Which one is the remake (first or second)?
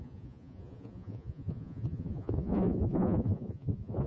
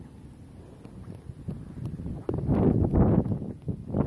first